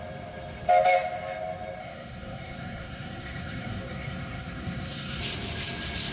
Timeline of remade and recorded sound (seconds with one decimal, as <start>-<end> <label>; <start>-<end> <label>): 0.0-1.8 recorded; 1.8-5.2 remade; 5.2-6.1 recorded